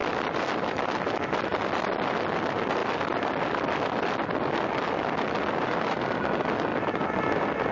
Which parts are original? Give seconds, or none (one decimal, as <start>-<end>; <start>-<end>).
1.1-2.8; 5.2-6.7